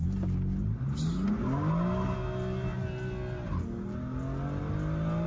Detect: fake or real real